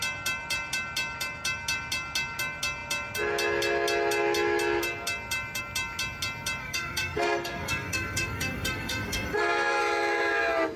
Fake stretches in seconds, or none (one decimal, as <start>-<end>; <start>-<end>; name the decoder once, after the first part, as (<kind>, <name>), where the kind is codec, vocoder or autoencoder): 6.6-9.8 (codec, SNAC)